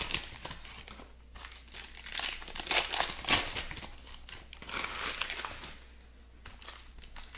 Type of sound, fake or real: real